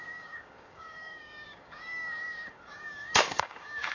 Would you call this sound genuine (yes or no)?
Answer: no